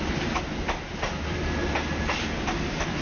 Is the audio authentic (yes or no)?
yes